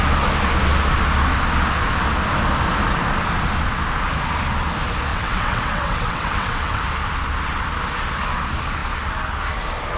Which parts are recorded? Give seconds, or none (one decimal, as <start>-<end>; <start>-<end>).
0.0-5.1; 6.8-10.0